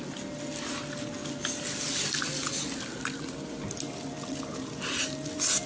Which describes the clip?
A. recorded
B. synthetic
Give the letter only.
A